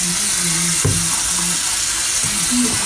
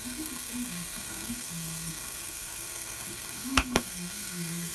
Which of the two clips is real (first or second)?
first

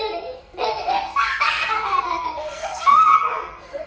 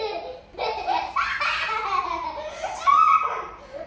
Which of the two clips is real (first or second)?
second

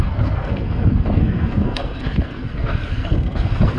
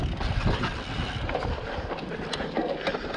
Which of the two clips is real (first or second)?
second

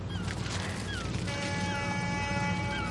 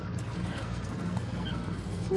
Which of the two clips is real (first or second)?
first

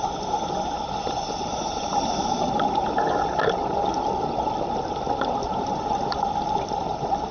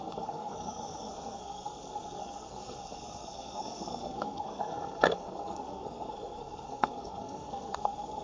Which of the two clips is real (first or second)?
first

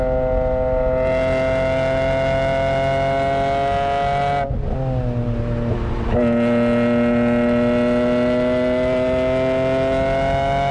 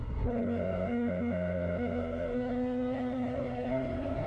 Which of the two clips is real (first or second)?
first